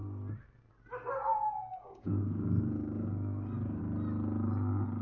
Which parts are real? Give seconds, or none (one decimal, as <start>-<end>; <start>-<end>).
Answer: 0.0-1.7; 3.8-5.0